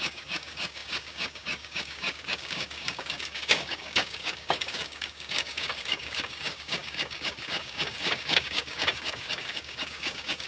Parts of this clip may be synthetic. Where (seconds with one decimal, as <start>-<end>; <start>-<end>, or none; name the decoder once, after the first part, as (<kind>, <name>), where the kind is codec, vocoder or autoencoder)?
0.0-10.5 (codec, DAC)